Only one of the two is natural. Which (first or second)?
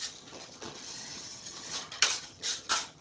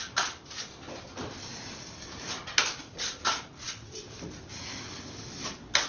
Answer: second